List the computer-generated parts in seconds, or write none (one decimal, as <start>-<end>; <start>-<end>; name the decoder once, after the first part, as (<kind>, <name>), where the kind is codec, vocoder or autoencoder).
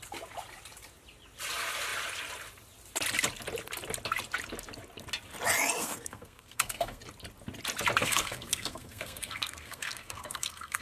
5.8-7.0 (codec, SNAC); 8.0-10.8